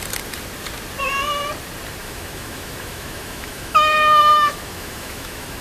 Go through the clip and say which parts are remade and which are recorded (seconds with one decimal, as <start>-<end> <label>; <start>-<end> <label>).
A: 0.0-2.0 recorded; 2.0-5.6 remade